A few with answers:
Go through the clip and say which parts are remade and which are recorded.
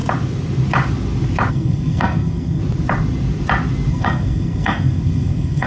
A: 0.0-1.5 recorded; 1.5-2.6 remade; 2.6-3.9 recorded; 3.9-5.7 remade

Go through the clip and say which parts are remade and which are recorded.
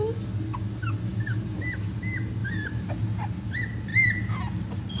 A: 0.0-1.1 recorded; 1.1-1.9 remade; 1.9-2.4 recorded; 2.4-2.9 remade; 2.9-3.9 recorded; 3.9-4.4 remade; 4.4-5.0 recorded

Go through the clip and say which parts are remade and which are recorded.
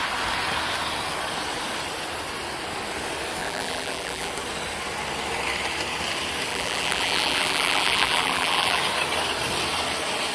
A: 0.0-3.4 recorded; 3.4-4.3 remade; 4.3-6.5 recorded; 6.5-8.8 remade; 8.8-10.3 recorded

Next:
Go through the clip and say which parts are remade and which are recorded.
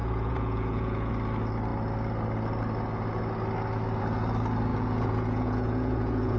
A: 0.0-1.1 remade; 1.1-4.7 recorded; 4.7-6.4 remade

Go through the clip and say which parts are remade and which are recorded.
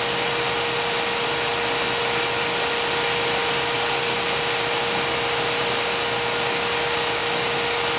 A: 0.0-3.4 recorded; 3.4-5.6 remade; 5.6-8.0 recorded